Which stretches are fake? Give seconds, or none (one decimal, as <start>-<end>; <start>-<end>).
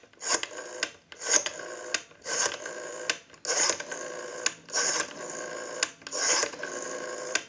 none